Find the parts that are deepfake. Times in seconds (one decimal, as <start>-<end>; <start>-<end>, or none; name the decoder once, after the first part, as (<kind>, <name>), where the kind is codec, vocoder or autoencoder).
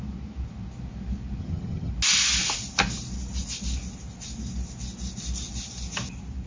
1.4-1.9 (vocoder, HiFi-GAN)